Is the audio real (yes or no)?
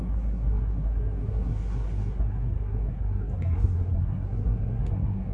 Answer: no